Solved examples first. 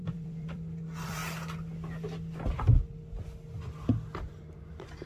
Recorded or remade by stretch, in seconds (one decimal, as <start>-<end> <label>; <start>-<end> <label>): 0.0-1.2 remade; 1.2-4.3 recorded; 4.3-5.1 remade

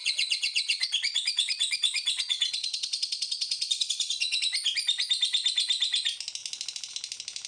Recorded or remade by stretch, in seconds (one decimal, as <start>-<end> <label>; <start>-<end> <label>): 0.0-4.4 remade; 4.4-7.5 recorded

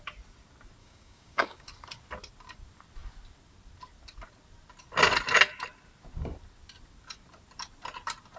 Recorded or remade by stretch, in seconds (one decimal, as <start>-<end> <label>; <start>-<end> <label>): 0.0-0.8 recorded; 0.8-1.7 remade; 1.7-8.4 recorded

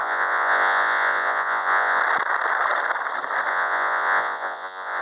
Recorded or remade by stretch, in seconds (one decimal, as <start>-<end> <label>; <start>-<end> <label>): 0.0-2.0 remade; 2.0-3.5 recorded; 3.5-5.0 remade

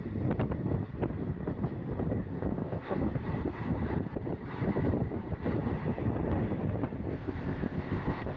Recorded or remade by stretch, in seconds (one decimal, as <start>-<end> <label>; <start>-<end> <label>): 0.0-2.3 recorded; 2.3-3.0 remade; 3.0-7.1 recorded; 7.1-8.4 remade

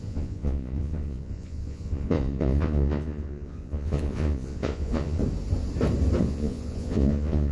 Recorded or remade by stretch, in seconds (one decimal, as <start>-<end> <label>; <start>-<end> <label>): 0.0-5.2 remade; 5.2-6.2 recorded; 6.2-7.5 remade

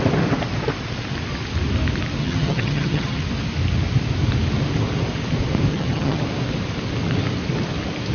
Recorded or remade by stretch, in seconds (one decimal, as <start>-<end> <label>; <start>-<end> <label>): 0.0-2.2 recorded; 2.2-3.2 remade; 3.2-5.7 recorded; 5.7-6.2 remade; 6.2-8.1 recorded